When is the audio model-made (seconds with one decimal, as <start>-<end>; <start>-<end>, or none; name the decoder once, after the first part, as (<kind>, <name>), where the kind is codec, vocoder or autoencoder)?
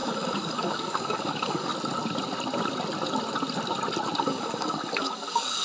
0.0-1.7 (codec, DAC); 4.2-5.6